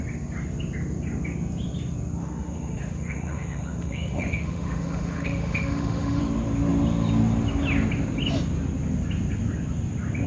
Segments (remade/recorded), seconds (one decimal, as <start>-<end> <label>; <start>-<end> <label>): 0.0-2.2 recorded; 2.2-6.2 remade; 6.2-10.3 recorded